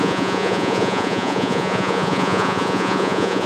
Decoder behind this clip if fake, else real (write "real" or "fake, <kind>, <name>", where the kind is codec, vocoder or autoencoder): fake, vocoder, Vocos